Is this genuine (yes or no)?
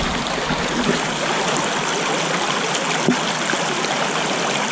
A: yes